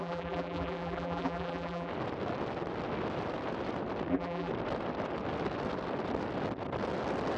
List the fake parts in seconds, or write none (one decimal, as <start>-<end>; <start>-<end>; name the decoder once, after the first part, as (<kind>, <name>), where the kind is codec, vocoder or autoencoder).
0.0-1.9 (vocoder, BigVGAN v2); 4.1-4.5